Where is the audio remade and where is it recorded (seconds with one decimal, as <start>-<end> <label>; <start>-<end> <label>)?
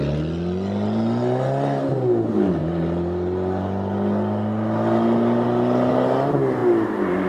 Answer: 0.0-7.3 recorded